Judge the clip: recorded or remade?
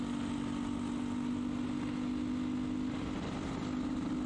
recorded